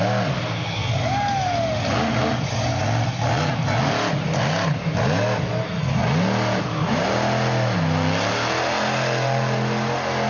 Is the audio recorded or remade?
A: recorded